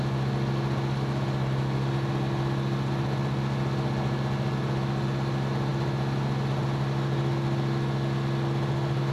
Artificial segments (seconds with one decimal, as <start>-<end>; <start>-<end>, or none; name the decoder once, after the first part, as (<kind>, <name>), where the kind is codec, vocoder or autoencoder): none